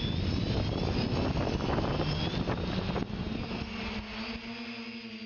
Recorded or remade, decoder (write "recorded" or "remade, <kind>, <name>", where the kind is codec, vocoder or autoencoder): recorded